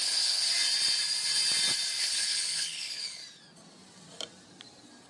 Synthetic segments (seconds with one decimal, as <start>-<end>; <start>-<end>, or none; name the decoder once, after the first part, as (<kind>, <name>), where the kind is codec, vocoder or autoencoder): 0.0-0.5 (codec, HILCodec); 2.0-3.2